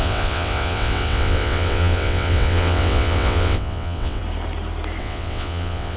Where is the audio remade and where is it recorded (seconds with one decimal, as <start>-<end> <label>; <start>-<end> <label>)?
0.0-4.2 remade; 4.2-5.0 recorded; 5.0-6.0 remade